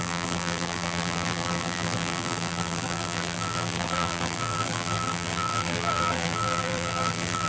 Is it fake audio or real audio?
fake